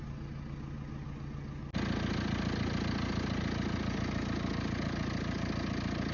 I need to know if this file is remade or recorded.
recorded